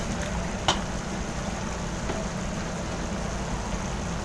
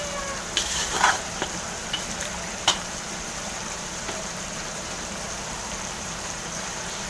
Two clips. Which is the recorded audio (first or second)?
first